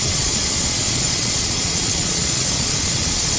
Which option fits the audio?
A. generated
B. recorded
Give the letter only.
A